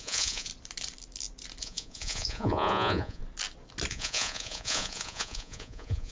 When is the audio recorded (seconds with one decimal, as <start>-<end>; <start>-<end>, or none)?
0.5-1.6; 3.2-3.9